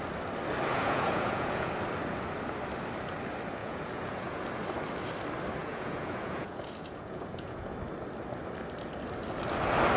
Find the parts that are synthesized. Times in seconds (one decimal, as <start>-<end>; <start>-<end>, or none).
0.7-1.7; 3.6-4.4; 5.6-7.7